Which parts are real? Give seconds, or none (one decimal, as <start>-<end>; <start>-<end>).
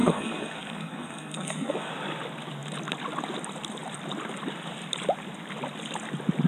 1.9-6.5